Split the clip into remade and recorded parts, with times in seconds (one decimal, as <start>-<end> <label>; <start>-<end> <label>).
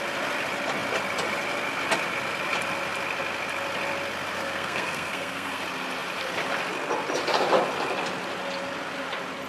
0.0-4.4 recorded; 4.4-5.6 remade; 5.6-9.5 recorded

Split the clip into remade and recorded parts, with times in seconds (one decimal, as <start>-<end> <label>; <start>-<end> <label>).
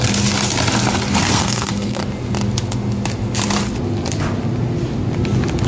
0.0-1.1 recorded; 1.1-2.0 remade; 2.0-5.7 recorded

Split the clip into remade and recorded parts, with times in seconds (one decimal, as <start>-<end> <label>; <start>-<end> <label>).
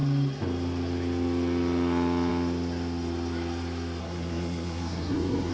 0.0-4.0 recorded; 4.0-5.5 remade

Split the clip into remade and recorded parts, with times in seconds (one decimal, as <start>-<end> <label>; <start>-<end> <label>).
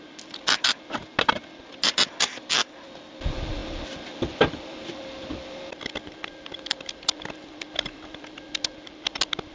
0.0-9.5 recorded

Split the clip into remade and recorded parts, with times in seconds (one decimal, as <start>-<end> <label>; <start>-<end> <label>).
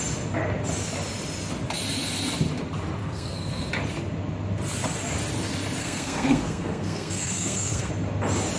0.0-3.0 recorded; 3.0-3.7 remade; 3.7-5.8 recorded; 5.8-7.9 remade; 7.9-8.6 recorded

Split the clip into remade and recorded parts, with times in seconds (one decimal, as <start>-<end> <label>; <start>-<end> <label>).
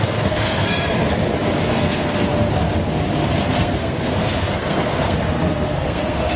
0.0-0.9 remade; 0.9-1.6 recorded; 1.6-2.3 remade; 2.3-3.4 recorded; 3.4-6.4 remade